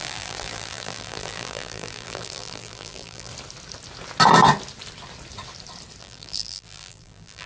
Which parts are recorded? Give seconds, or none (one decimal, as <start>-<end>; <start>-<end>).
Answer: 3.3-6.0